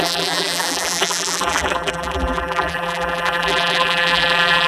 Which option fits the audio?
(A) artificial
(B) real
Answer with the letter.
A